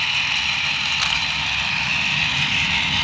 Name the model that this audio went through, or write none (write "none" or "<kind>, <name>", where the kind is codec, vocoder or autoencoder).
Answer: none